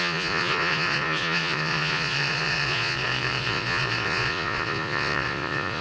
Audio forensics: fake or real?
fake